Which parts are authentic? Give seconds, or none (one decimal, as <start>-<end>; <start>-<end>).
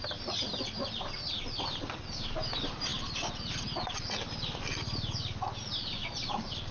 0.0-6.7